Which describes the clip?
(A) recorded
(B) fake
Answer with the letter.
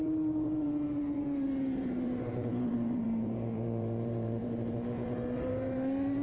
B